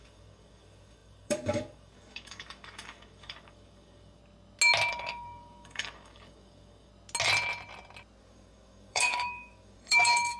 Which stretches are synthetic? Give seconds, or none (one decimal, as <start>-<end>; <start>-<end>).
0.0-4.2; 4.9-6.9; 8.2-10.4